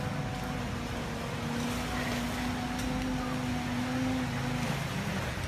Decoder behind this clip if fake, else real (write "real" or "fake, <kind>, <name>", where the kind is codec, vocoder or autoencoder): real